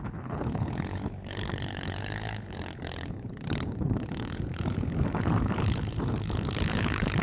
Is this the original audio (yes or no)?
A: no